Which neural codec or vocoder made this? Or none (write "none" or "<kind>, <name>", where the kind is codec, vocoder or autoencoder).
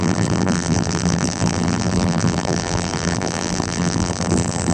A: vocoder, BigVGAN v2